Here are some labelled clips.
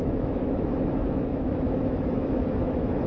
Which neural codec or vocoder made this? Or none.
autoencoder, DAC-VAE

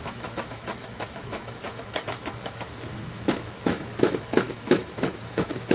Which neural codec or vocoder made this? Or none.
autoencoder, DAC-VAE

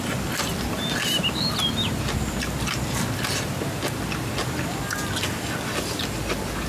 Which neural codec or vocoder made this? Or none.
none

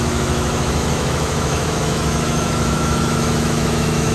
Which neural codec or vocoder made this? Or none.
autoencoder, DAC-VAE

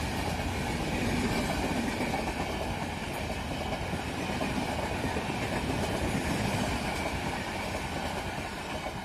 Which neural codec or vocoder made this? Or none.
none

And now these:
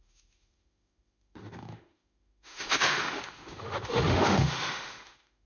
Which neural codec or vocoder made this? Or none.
autoencoder, DAC-VAE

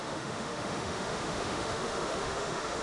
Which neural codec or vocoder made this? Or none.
autoencoder, DAC-VAE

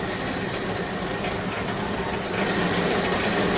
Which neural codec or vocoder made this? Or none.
none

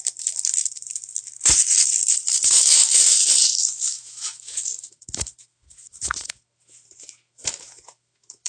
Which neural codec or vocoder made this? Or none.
autoencoder, DAC-VAE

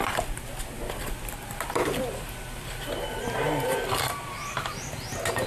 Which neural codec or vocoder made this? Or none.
none